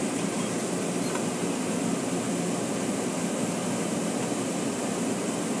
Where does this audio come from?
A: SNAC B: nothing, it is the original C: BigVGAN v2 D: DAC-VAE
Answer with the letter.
B